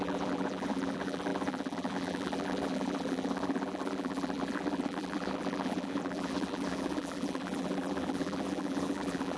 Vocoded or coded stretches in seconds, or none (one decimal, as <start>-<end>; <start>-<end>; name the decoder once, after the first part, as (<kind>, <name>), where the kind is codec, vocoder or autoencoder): 0.0-9.4 (vocoder, BigVGAN v2)